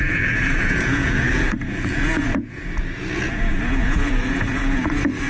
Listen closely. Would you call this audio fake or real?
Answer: fake